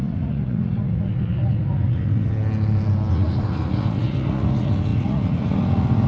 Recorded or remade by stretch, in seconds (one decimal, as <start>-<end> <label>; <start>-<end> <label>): 0.0-2.3 remade; 2.3-3.1 recorded; 3.1-6.1 remade